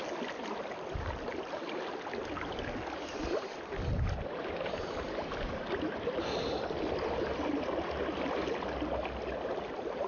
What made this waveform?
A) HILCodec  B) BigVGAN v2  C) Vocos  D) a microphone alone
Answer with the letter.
D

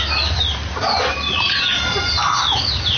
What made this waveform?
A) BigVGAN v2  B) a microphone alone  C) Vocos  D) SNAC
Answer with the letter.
B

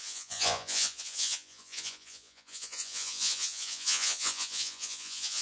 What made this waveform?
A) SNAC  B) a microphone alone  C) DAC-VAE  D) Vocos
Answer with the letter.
D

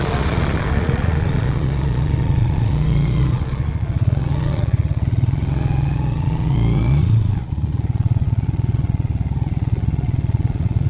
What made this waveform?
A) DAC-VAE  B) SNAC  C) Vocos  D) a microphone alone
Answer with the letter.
C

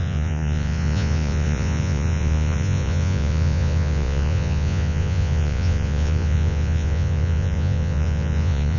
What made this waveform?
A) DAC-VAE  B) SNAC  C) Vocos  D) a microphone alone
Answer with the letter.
C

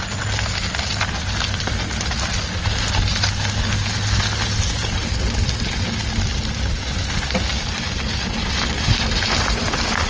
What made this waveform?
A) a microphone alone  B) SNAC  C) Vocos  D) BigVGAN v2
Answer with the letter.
A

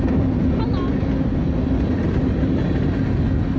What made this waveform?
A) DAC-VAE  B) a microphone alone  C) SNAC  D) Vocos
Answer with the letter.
B